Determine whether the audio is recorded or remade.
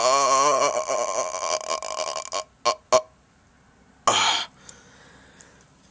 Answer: recorded